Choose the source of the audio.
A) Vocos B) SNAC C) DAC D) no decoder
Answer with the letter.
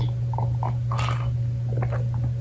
D